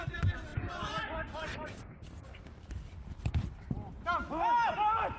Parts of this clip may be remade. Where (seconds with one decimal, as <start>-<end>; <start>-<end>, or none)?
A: 0.5-3.6